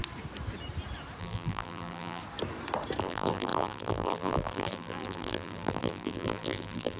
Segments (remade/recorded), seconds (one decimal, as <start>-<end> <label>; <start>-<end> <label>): 0.0-1.2 recorded; 1.2-2.2 remade; 2.2-3.0 recorded; 3.0-7.0 remade